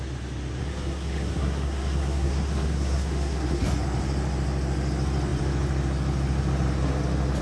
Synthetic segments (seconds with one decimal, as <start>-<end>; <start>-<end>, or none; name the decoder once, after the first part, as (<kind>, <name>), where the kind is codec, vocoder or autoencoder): 0.6-3.6 (codec, SNAC)